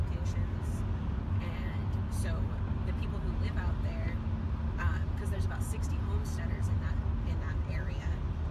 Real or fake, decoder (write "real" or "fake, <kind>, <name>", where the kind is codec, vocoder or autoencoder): real